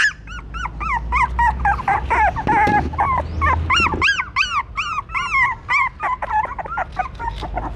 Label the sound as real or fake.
real